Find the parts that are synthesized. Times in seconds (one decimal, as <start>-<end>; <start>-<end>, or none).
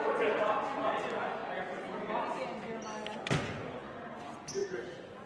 0.0-1.4; 3.2-5.3